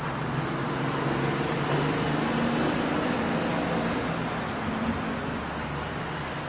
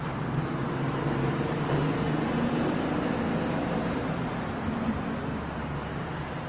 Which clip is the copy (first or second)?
second